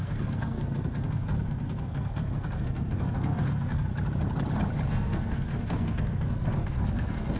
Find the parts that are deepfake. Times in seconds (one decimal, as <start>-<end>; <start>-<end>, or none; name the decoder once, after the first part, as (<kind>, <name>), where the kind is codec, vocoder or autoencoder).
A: 0.0-3.9 (codec, SNAC); 4.9-7.4